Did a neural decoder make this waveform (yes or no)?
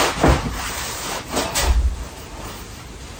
no